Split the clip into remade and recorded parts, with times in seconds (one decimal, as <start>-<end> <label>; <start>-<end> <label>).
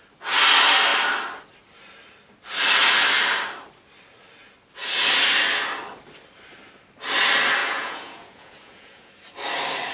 0.0-7.6 recorded; 7.6-9.1 remade; 9.1-9.9 recorded